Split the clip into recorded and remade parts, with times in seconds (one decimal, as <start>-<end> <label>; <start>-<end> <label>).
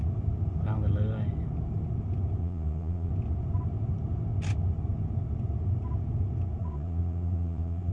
0.0-2.4 recorded; 2.4-3.1 remade; 3.1-6.6 recorded; 6.6-7.9 remade